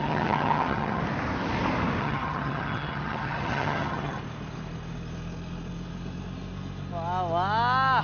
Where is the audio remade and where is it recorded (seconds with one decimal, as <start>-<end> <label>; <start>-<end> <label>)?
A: 0.0-1.0 remade; 1.0-2.0 recorded; 2.0-4.2 remade; 4.2-8.0 recorded